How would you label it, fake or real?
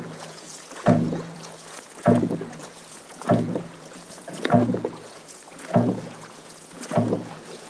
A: fake